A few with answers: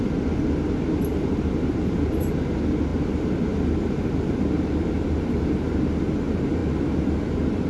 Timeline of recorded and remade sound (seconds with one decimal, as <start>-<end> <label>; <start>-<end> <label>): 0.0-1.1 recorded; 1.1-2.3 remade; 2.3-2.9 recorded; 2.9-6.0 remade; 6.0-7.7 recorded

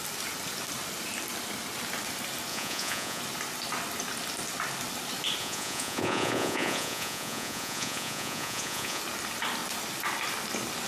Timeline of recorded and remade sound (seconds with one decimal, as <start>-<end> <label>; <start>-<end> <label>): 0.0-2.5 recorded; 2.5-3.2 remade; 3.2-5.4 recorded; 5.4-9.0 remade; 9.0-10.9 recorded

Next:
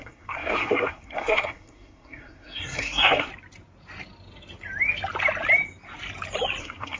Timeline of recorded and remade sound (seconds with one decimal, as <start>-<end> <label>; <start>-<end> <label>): 0.0-3.3 remade; 3.3-6.6 recorded; 6.6-7.0 remade

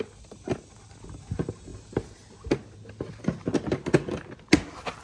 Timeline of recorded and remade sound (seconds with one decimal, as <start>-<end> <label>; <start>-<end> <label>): 0.0-5.0 recorded

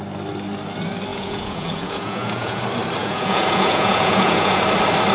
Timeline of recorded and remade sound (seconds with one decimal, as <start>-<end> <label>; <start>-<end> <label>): 0.0-1.1 recorded; 1.1-2.6 remade; 2.6-3.0 recorded; 3.0-4.6 remade; 4.6-5.1 recorded

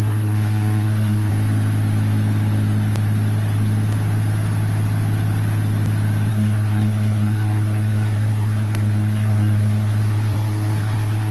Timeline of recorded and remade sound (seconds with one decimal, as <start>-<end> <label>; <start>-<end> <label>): 0.0-1.3 remade; 1.3-6.3 recorded; 6.3-11.3 remade

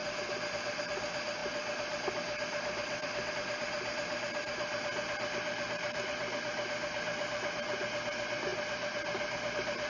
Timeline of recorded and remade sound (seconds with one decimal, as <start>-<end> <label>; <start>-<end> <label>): 0.0-9.9 recorded